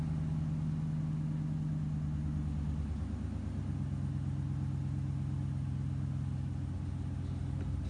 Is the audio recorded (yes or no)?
yes